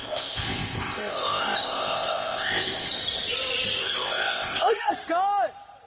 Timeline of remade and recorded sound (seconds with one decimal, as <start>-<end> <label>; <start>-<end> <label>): 0.0-2.9 remade; 2.9-3.8 recorded; 3.8-4.9 remade; 4.9-5.9 recorded